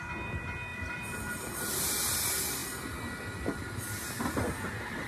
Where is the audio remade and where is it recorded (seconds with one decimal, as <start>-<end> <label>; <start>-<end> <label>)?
0.0-0.7 recorded; 0.7-1.9 remade; 1.9-2.6 recorded; 2.6-4.1 remade; 4.1-5.1 recorded